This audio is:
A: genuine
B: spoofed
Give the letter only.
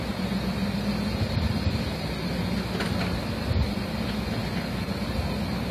A